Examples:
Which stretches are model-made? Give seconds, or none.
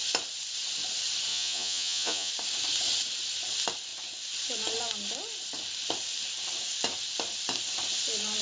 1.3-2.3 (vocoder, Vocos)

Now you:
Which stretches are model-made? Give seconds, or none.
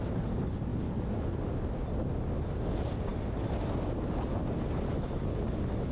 none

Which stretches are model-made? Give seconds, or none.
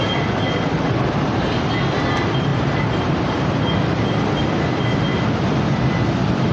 2.5-3.5 (vocoder, BigVGAN v2)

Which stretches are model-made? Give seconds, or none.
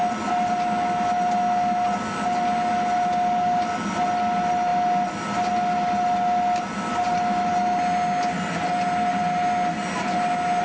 none